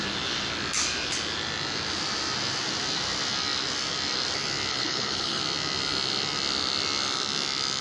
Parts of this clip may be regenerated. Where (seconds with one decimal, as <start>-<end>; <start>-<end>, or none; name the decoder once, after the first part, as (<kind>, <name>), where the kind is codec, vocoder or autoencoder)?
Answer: 4.7-5.4 (codec, HILCodec)